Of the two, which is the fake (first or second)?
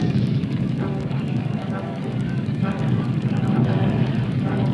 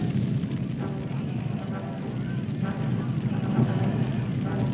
first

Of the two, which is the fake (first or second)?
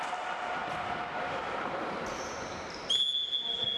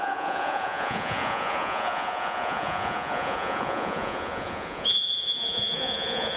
second